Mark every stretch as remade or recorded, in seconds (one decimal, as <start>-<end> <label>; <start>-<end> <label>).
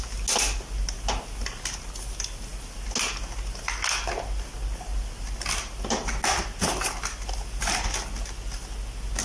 0.0-9.2 recorded